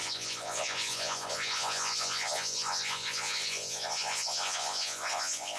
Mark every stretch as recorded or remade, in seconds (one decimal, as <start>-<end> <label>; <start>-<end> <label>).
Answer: 0.0-5.6 remade